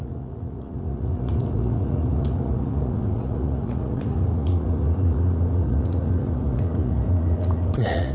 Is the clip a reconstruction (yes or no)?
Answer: yes